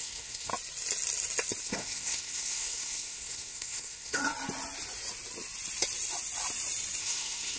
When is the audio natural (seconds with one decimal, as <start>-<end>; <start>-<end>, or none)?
0.5-1.6; 4.2-7.0